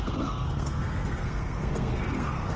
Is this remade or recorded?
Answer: remade